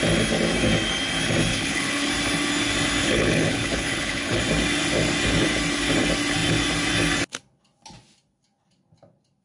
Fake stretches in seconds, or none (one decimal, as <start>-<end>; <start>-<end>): 1.5-2.1; 3.0-4.4